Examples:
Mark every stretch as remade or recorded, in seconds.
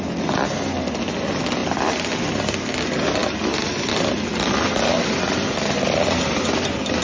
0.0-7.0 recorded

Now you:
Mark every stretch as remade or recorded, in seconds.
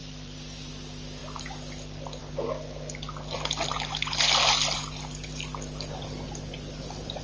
0.0-0.7 remade; 0.7-7.2 recorded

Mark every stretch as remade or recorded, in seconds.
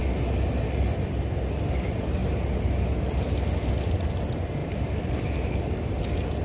0.0-4.6 recorded; 4.6-5.3 remade; 5.3-6.4 recorded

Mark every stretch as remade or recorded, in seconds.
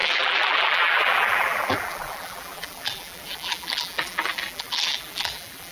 0.0-5.7 remade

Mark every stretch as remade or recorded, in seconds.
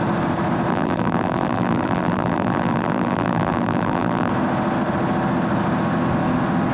0.0-0.7 recorded; 0.7-4.3 remade; 4.3-6.7 recorded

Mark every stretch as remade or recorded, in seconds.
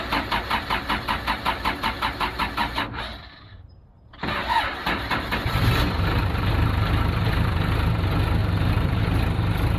0.0-2.6 recorded; 2.6-7.7 remade; 7.7-8.4 recorded; 8.4-9.0 remade; 9.0-9.8 recorded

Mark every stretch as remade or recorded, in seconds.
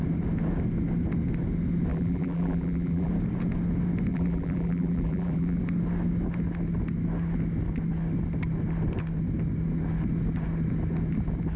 0.0-1.9 recorded; 1.9-3.1 remade; 3.1-4.1 recorded; 4.1-5.6 remade; 5.6-11.6 recorded